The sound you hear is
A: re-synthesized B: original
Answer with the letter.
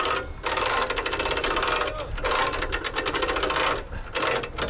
B